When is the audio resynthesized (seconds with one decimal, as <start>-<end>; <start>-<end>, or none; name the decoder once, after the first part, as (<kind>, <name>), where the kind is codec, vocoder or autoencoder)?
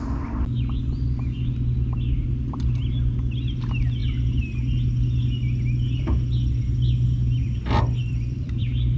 8.0-9.0 (vocoder, BigVGAN v2)